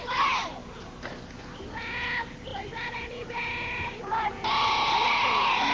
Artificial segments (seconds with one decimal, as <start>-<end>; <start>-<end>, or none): none